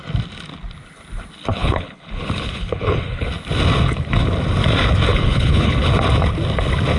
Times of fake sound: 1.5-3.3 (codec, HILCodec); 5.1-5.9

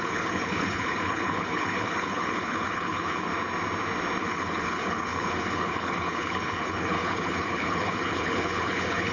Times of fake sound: 0.0-3.3 (codec, HILCodec); 4.2-9.1

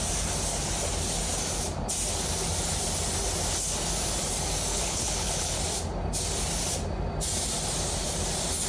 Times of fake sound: 4.7-5.6 (codec, HILCodec)

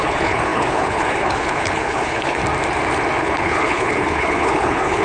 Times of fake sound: 0.0-2.4 (codec, HILCodec); 3.2-5.0